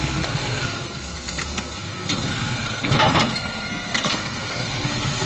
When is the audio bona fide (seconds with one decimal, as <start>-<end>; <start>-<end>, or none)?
none